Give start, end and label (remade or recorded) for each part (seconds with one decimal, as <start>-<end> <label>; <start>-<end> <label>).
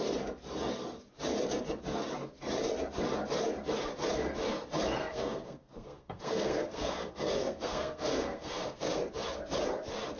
0.0-5.0 recorded; 5.0-9.0 remade; 9.0-10.2 recorded